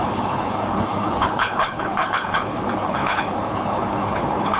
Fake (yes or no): yes